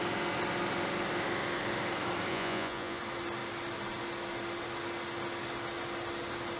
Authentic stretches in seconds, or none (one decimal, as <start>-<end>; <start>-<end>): 0.0-2.3; 3.0-6.6